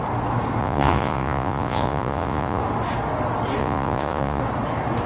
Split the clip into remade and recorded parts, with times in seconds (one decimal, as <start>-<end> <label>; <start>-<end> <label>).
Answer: 0.0-0.6 recorded; 0.6-2.6 remade; 2.6-3.6 recorded; 3.6-4.4 remade; 4.4-5.1 recorded